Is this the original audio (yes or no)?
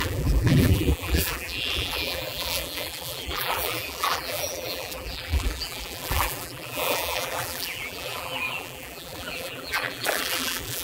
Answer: no